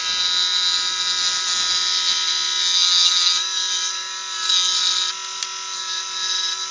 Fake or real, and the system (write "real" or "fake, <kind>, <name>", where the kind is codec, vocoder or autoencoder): real